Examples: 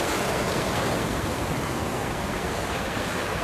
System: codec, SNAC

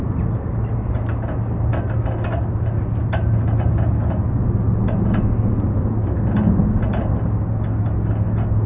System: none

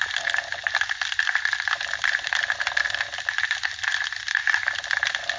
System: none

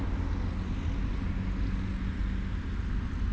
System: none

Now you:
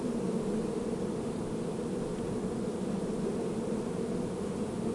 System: none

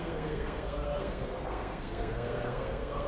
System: codec, SNAC